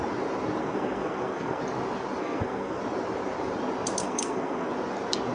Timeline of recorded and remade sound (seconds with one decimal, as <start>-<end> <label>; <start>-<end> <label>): 0.0-0.6 recorded; 0.6-1.6 remade; 1.6-2.2 recorded; 2.2-2.8 remade; 2.8-4.0 recorded; 4.0-4.7 remade; 4.7-5.3 recorded